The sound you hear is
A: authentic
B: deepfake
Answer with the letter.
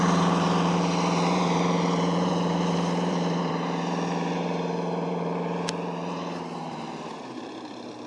B